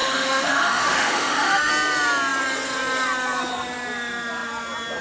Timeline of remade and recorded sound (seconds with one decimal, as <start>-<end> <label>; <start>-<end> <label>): 0.0-1.7 remade; 1.7-5.0 recorded